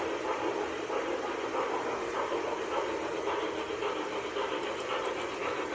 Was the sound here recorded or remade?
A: recorded